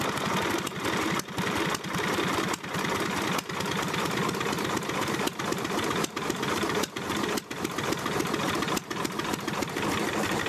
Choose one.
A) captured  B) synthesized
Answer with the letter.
A